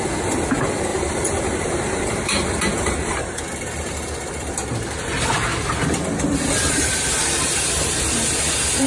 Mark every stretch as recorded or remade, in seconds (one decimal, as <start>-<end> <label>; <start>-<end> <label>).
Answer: 0.0-0.9 recorded; 0.9-3.4 remade; 3.4-8.9 recorded